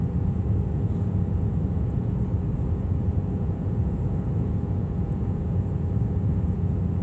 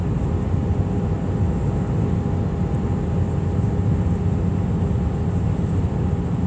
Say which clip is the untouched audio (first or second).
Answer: second